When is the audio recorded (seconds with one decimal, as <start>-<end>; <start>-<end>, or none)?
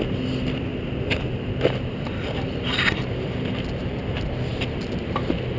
0.0-0.7; 4.1-4.5